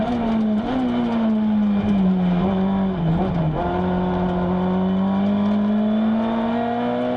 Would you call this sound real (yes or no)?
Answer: yes